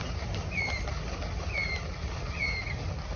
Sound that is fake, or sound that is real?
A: real